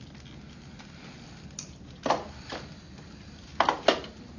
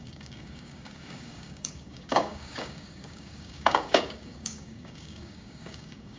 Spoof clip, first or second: second